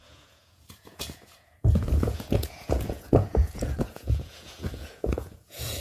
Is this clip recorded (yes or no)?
no